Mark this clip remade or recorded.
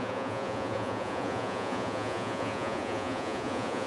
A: remade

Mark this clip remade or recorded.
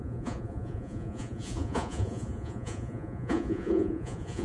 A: remade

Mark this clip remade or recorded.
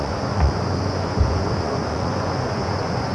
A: remade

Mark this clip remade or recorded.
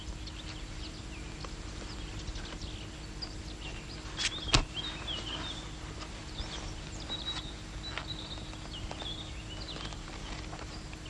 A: recorded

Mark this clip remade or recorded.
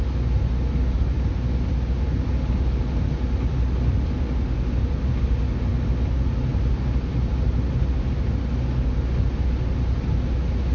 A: recorded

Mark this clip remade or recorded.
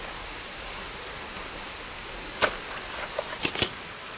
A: recorded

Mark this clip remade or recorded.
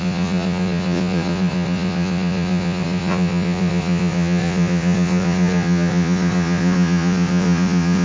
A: remade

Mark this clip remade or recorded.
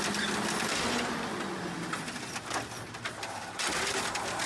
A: recorded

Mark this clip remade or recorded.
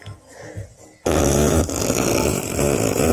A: recorded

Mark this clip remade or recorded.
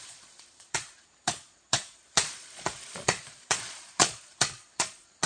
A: remade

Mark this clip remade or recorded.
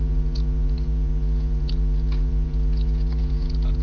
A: remade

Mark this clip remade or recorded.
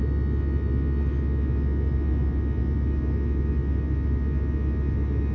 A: recorded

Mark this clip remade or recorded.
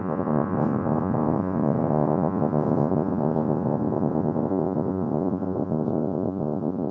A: remade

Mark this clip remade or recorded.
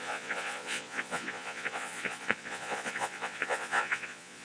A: remade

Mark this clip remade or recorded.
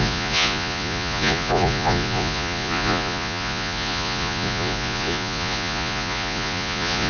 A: remade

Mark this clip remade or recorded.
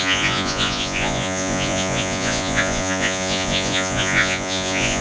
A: remade